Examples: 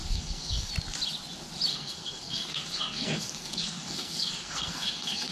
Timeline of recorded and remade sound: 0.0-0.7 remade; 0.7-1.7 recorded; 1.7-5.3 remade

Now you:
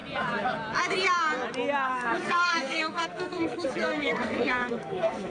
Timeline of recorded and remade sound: 0.0-1.9 recorded; 1.9-5.3 remade

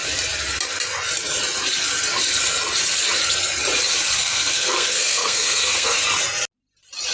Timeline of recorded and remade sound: 0.0-4.2 recorded; 4.2-6.0 remade; 6.0-7.1 recorded

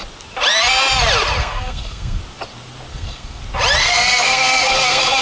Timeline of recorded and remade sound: 0.0-1.4 recorded; 1.4-2.2 remade; 2.2-2.9 recorded; 2.9-3.4 remade; 3.4-3.8 recorded; 3.8-5.2 remade

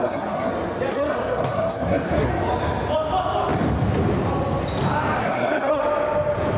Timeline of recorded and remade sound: 0.0-0.5 remade; 0.5-0.9 recorded; 0.9-2.3 remade; 2.3-5.2 recorded; 5.2-5.8 remade; 5.8-6.6 recorded